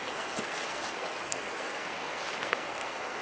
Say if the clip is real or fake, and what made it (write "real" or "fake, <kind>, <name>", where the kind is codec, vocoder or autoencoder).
fake, codec, SNAC